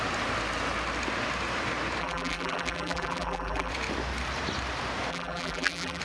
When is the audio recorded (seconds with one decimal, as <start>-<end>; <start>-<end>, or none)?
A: 0.0-2.0; 3.7-5.1

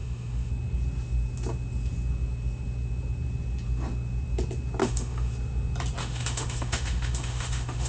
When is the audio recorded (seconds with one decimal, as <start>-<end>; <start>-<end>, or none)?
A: 0.5-4.8; 5.3-6.0

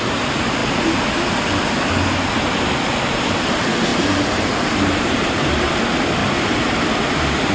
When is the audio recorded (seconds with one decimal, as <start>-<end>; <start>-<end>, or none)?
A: 0.0-3.9; 5.7-7.5

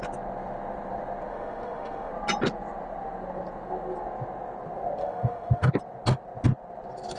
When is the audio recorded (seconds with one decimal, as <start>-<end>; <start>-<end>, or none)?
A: 0.0-1.3; 2.1-5.0; 5.7-7.2

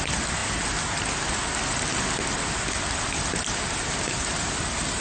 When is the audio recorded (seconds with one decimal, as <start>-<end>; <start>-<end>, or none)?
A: 0.0-0.4; 1.3-5.0